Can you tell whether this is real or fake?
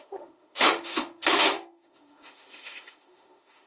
fake